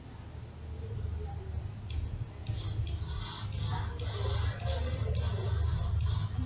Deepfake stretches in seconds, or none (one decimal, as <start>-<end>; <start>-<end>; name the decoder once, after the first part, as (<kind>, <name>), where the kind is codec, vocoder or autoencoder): none